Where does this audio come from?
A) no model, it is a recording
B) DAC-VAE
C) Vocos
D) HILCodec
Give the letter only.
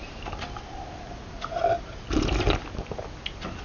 A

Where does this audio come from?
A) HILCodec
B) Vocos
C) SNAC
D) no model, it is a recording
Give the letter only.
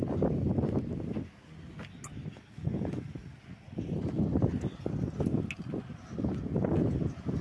D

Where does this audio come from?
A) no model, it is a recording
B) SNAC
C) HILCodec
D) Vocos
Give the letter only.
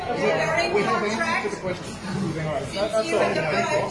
A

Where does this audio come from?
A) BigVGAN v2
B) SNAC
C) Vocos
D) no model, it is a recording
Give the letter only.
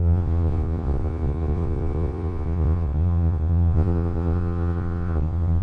C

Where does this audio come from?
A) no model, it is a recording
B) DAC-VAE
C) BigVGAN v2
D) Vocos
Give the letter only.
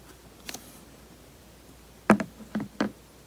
A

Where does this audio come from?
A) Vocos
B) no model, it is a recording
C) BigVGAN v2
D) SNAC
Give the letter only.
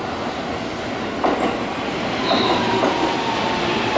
B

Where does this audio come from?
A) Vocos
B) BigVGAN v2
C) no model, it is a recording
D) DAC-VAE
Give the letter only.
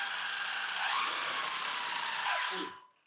C